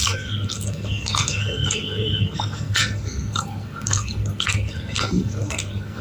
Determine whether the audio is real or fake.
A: fake